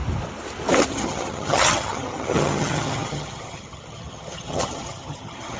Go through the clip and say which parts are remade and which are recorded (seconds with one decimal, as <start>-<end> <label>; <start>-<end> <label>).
0.0-0.9 recorded; 0.9-5.6 remade